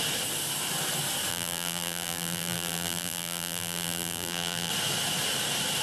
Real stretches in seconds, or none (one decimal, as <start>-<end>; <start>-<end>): 0.0-1.3; 4.7-5.8